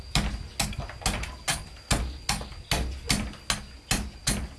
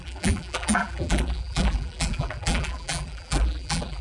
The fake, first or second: second